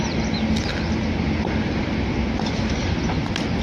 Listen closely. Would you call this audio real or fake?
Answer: real